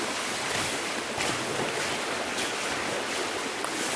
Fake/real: real